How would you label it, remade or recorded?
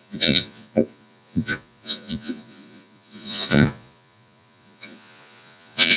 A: remade